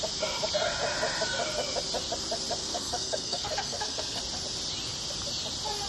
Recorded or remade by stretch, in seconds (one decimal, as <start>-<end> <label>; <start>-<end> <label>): 0.0-2.6 recorded; 2.6-4.2 remade; 4.2-5.9 recorded